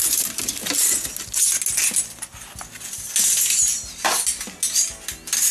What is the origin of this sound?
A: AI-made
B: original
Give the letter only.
B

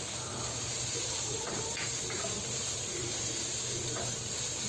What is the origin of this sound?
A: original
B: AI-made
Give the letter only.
B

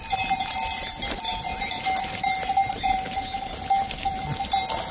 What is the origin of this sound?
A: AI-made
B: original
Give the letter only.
B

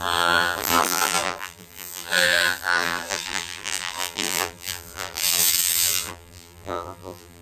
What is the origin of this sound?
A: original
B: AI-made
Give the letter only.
B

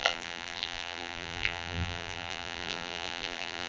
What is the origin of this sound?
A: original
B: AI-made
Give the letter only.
B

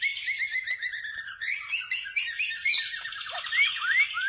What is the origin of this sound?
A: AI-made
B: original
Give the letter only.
A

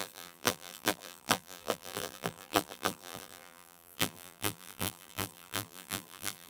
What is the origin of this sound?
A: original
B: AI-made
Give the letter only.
B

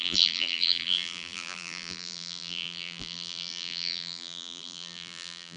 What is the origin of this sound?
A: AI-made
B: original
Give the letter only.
A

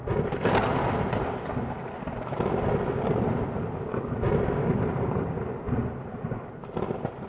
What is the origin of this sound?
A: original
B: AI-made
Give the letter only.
A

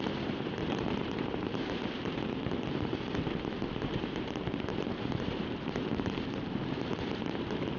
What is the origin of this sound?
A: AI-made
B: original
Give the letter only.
A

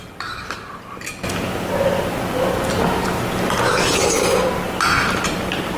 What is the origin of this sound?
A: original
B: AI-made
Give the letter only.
A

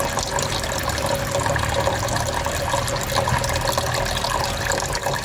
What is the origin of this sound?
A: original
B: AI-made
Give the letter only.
A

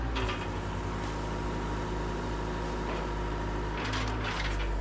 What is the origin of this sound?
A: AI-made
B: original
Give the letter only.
B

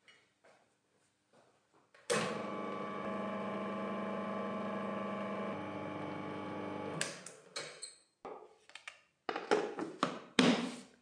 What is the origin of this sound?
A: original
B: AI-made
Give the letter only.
A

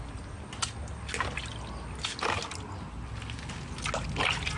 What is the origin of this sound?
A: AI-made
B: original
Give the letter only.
B